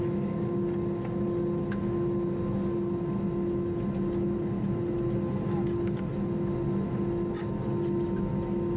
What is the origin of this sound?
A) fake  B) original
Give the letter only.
B